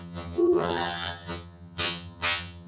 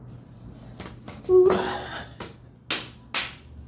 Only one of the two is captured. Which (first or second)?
second